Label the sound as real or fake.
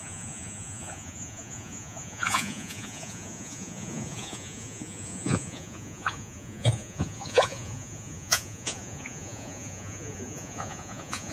fake